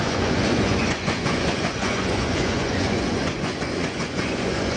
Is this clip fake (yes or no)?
yes